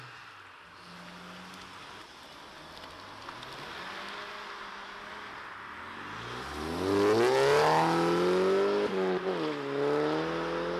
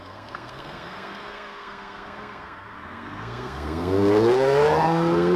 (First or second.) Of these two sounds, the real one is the first